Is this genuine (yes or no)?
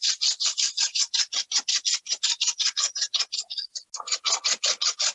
yes